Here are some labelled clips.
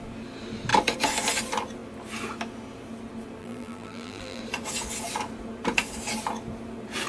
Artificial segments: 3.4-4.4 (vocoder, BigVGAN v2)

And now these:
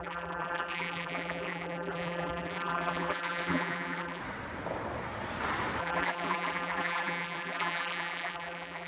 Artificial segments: 0.0-4.2 (vocoder, BigVGAN v2); 5.8-8.9

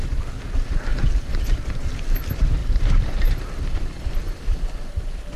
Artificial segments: 0.9-1.9 (vocoder, BigVGAN v2); 2.6-3.3

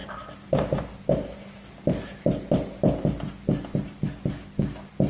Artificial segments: 0.0-0.8 (vocoder, BigVGAN v2)

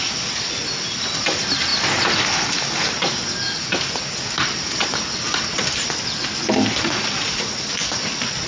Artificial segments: none

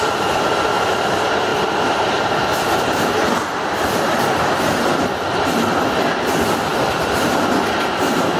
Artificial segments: 1.5-5.5 (vocoder, BigVGAN v2); 6.7-8.0

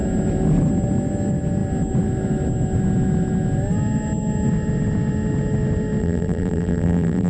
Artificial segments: 6.0-7.3 (vocoder, BigVGAN v2)